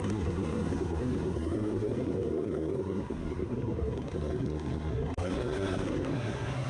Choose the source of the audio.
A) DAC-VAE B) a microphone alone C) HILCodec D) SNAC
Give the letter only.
D